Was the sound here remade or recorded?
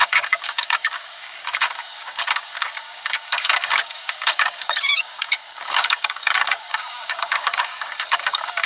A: remade